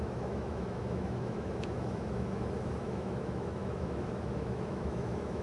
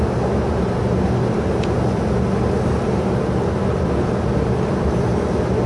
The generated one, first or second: first